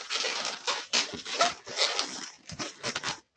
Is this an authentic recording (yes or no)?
yes